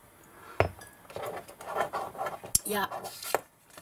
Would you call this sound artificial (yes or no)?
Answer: no